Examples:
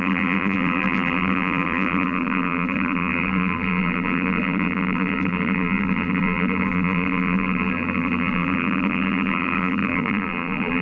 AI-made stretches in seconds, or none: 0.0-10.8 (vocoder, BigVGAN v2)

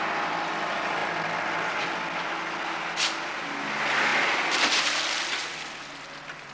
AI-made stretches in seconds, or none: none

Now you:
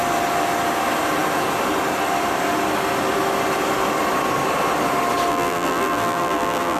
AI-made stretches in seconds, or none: 5.3-6.8 (vocoder, BigVGAN v2)

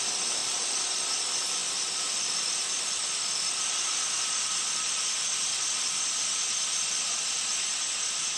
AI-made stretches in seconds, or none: 0.0-8.4 (vocoder, BigVGAN v2)

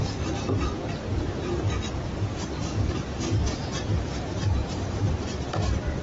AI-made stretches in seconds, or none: 4.5-5.3 (vocoder, BigVGAN v2)

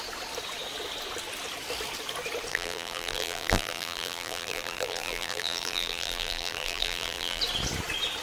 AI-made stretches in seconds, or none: 2.5-7.4 (vocoder, BigVGAN v2)

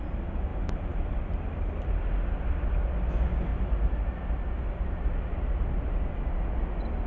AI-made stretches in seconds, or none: 0.5-1.2 (vocoder, BigVGAN v2); 3.5-4.0

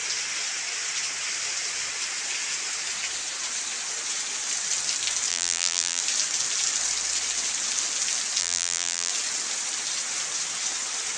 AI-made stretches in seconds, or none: 5.3-6.0 (vocoder, BigVGAN v2); 8.4-9.1